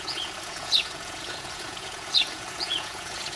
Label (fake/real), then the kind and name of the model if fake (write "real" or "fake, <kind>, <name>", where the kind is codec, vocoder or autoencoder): fake, vocoder, Vocos